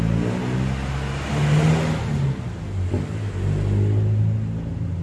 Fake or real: real